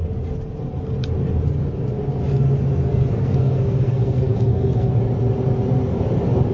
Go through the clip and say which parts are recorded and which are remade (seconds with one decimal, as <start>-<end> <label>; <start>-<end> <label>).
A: 0.0-2.9 recorded; 2.9-4.9 remade; 4.9-6.5 recorded